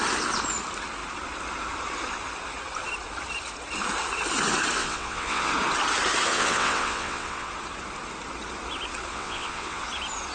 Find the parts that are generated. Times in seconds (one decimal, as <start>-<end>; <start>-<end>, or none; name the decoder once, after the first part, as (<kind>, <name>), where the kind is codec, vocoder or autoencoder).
4.8-5.5 (vocoder, WaveNeXt); 6.3-7.5; 9.1-9.8